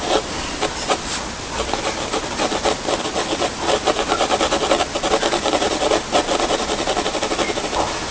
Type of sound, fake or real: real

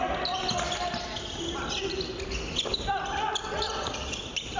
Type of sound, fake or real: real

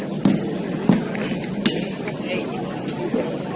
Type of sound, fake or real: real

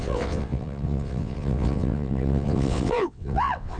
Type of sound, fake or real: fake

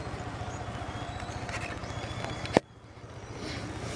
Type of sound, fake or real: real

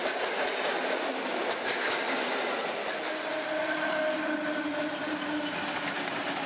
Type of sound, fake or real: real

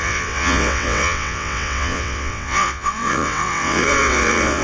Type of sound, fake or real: fake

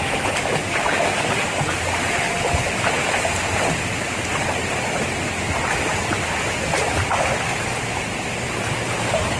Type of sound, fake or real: real